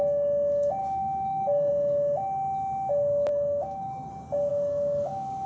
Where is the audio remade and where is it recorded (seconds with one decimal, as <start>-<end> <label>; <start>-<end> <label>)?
0.0-0.8 recorded; 0.8-1.7 remade; 1.7-3.3 recorded; 3.3-4.1 remade; 4.1-4.5 recorded; 4.5-5.5 remade